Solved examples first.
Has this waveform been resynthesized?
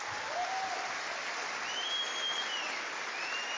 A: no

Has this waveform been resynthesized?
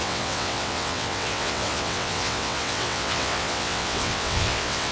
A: yes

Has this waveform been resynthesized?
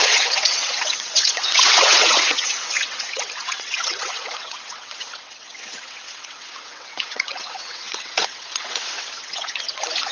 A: yes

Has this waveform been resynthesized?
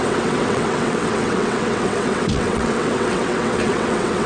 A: yes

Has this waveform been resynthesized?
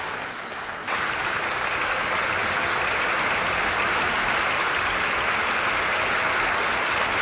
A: no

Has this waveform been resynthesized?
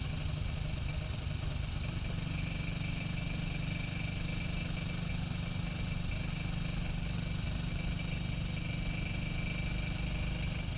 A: no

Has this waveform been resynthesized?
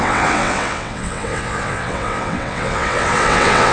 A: yes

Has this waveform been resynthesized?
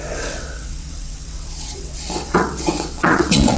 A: yes